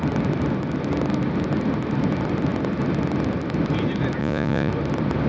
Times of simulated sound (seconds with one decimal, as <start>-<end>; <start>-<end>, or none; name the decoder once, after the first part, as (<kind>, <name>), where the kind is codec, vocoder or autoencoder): 4.2-4.7 (vocoder, Vocos)